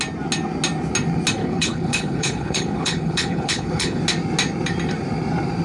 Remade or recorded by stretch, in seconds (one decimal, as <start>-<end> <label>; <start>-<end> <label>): 0.0-1.4 recorded; 1.4-4.0 remade; 4.0-5.6 recorded